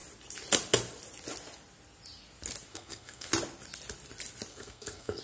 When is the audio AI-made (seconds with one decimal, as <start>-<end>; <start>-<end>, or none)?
2.7-3.3; 4.5-5.2